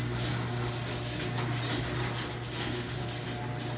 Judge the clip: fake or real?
real